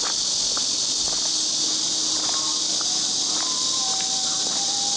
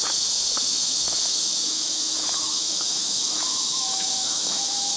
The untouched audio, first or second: first